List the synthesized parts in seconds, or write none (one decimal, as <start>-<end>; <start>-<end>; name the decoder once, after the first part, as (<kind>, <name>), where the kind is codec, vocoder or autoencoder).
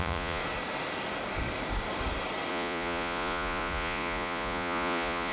0.0-0.4 (vocoder, Vocos); 2.5-5.3